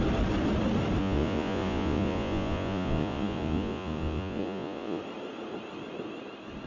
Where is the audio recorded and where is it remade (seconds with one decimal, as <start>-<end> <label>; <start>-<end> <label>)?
0.0-1.0 recorded; 1.0-5.0 remade; 5.0-6.7 recorded